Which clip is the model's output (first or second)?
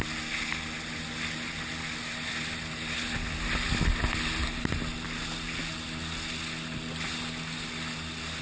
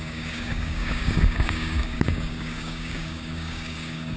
second